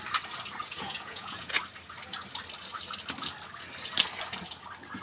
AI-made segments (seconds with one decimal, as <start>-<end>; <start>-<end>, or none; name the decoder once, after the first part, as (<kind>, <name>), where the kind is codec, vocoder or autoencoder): 0.6-1.6 (vocoder, Vocos)